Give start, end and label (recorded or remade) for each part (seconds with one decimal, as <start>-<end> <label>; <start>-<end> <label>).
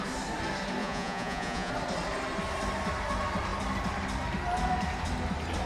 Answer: 0.0-0.8 recorded; 0.8-1.7 remade; 1.7-5.7 recorded